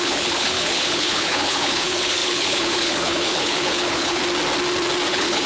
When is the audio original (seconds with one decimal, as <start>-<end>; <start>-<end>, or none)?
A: 4.2-5.1